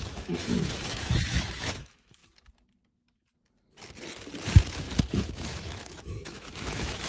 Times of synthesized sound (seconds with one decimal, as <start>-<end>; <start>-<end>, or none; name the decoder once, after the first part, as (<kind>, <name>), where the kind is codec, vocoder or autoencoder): 0.0-2.2 (autoencoder, DAC-VAE); 5.0-7.1